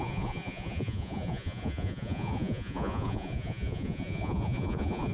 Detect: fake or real fake